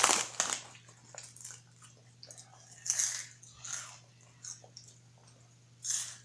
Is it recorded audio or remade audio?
recorded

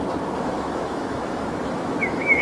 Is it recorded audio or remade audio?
remade